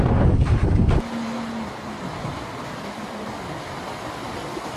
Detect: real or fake real